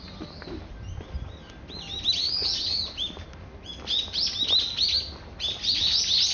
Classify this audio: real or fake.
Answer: real